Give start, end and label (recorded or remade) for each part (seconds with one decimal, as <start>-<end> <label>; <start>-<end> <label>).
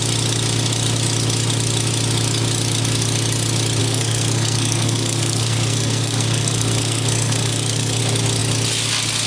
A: 0.0-3.8 recorded; 3.8-8.0 remade; 8.0-9.3 recorded